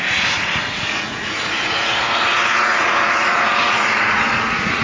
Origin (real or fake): fake